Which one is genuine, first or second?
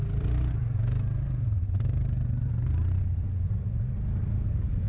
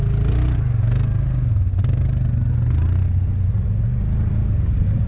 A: second